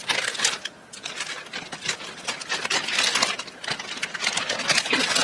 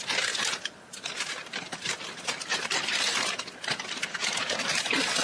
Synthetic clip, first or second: second